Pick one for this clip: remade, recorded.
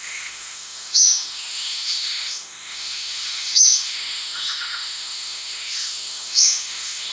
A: remade